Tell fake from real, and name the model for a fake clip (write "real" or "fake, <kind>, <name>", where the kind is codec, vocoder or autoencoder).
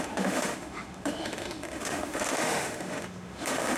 fake, autoencoder, DAC-VAE